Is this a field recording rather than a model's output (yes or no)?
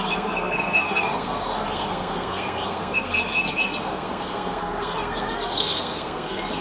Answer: no